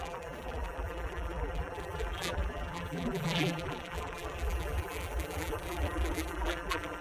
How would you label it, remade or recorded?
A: remade